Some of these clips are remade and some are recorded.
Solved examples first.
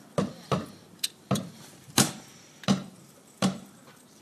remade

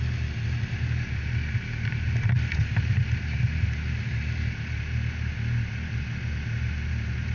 recorded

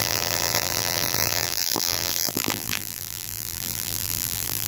remade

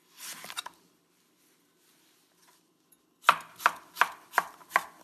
recorded